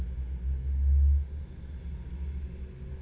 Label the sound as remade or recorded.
recorded